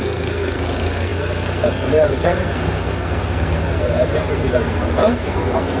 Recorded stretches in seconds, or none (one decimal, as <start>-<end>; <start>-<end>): none

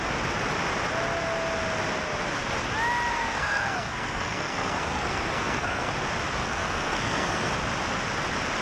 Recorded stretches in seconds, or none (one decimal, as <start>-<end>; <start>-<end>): 0.0-3.1; 5.9-6.4; 7.5-8.6